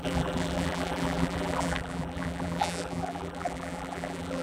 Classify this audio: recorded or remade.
remade